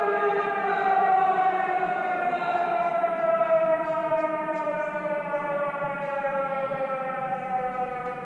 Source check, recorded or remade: remade